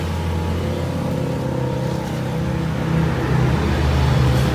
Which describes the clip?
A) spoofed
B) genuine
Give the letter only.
B